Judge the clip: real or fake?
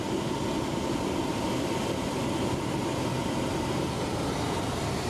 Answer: real